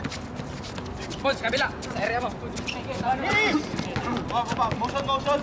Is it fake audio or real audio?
real